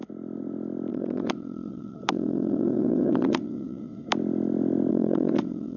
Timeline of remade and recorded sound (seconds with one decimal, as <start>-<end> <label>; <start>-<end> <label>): 0.0-0.9 recorded; 0.9-4.1 remade; 4.1-4.9 recorded; 4.9-5.8 remade